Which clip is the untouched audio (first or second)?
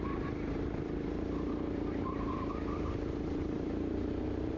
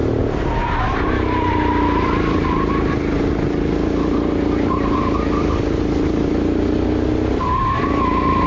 second